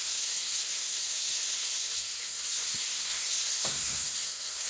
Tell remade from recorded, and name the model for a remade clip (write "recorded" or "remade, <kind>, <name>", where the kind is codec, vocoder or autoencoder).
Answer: remade, codec, SNAC